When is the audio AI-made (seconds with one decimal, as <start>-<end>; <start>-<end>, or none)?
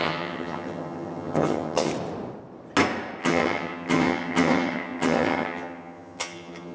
0.0-1.9; 3.2-6.7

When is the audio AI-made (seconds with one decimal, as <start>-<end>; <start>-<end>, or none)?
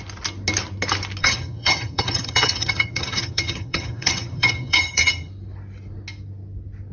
1.2-5.3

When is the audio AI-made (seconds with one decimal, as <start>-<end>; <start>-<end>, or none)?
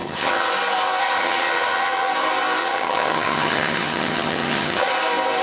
0.0-0.5; 1.0-2.1; 2.6-4.9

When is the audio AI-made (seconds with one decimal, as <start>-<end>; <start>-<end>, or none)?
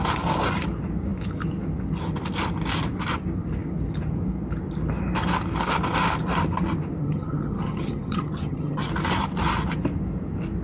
7.0-8.9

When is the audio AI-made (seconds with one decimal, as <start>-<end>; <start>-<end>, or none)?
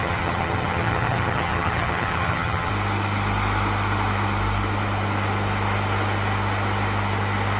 0.0-2.7